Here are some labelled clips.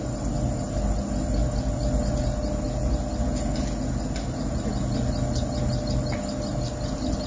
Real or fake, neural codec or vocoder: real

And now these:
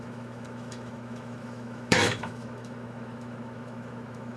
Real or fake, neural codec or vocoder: fake, autoencoder, DAC-VAE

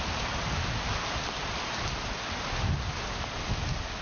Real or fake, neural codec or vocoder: real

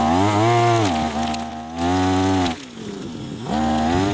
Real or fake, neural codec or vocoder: real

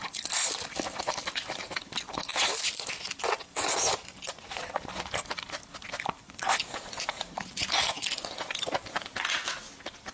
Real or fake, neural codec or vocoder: real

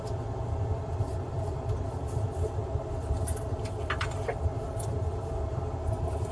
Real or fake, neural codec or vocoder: fake, vocoder, BigVGAN v2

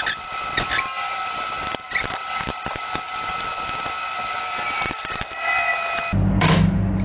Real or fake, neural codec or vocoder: real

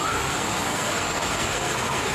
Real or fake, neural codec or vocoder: fake, codec, SNAC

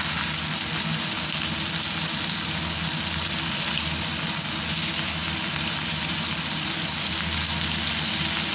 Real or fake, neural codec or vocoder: real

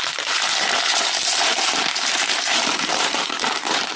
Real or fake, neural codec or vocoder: fake, vocoder, BigVGAN v2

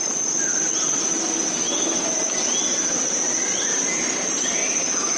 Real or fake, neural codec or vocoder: real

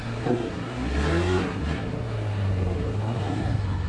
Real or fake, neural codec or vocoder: fake, codec, SNAC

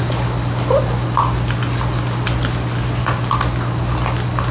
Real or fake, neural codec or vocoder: real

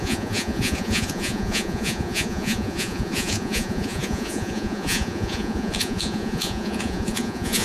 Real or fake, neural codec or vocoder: fake, vocoder, Vocos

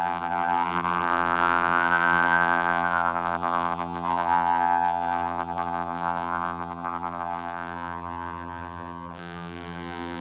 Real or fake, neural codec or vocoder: fake, vocoder, BigVGAN v2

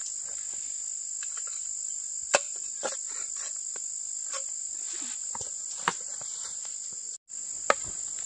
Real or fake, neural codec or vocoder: real